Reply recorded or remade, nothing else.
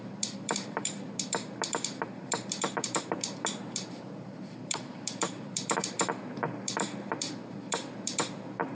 remade